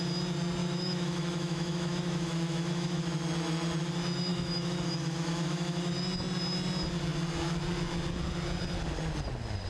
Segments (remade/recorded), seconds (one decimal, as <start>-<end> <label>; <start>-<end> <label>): 0.0-0.6 recorded; 0.6-3.0 remade; 3.0-4.3 recorded; 4.3-5.9 remade; 5.9-9.7 recorded